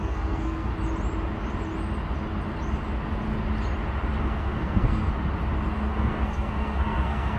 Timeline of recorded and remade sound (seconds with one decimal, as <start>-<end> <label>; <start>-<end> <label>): 0.0-0.7 remade; 0.7-4.2 recorded; 4.2-5.1 remade; 5.1-5.9 recorded; 5.9-7.4 remade